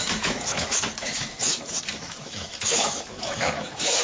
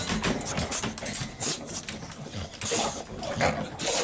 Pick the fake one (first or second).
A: first